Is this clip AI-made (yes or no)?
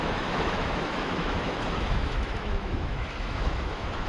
yes